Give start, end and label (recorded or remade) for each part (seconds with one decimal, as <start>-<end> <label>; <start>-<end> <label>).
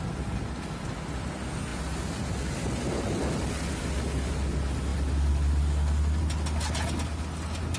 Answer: 0.0-7.8 recorded